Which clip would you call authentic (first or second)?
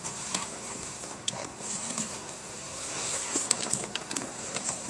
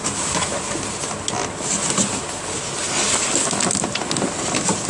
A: second